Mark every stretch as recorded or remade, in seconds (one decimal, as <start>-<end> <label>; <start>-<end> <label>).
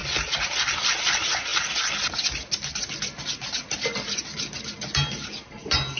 0.0-6.0 recorded